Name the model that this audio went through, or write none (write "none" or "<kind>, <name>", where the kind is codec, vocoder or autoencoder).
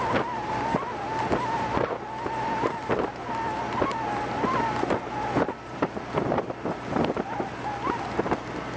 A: none